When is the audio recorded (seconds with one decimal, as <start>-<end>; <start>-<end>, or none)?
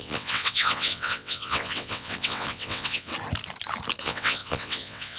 3.1-4.0